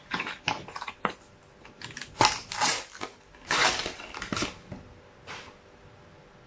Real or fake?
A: real